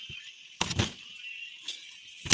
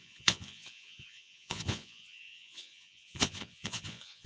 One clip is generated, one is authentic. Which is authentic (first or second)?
first